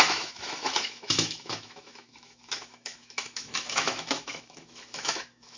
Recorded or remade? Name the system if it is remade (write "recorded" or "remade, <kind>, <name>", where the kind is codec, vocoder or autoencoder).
remade, autoencoder, DAC-VAE